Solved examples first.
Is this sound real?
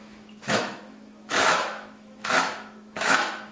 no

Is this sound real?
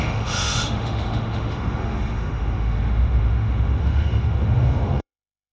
no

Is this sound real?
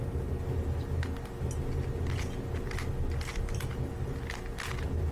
yes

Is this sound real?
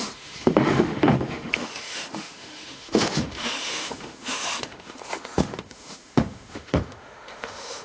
no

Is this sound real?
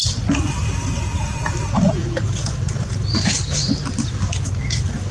yes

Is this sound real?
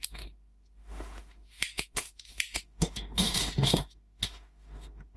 no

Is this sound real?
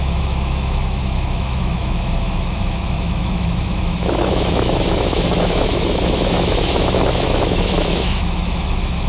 no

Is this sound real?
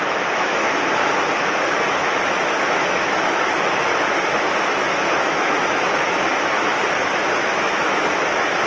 no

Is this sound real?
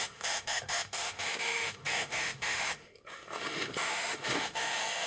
no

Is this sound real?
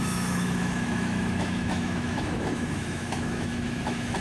no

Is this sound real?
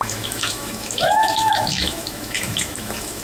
no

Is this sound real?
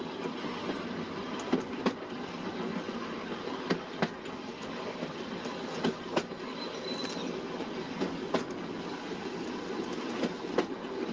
yes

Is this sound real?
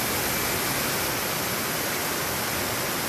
yes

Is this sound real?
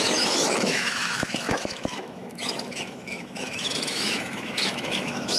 no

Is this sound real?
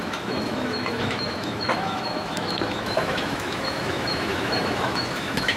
no